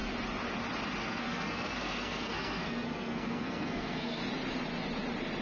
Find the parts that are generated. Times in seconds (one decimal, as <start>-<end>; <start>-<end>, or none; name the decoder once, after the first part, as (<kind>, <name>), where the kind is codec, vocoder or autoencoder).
1.0-4.2 (codec, SNAC)